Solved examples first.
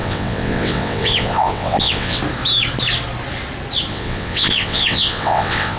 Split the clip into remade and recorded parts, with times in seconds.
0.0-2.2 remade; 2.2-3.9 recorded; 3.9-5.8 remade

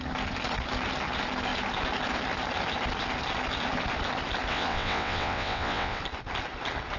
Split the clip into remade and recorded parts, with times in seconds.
0.0-4.5 recorded; 4.5-6.0 remade; 6.0-7.0 recorded

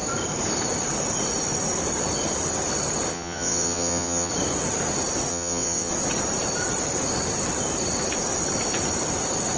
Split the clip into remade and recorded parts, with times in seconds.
0.0-3.1 recorded; 3.1-4.3 remade; 4.3-5.3 recorded; 5.3-5.9 remade; 5.9-9.6 recorded

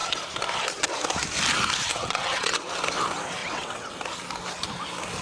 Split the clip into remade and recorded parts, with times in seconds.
0.0-1.9 recorded; 1.9-2.6 remade; 2.6-3.4 recorded; 3.4-3.9 remade; 3.9-5.2 recorded